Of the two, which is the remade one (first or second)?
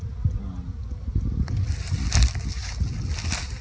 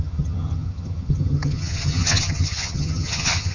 second